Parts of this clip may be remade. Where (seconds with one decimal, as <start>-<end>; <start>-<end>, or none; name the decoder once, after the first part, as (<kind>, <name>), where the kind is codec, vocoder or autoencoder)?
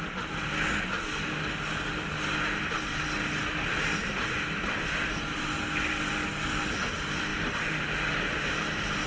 none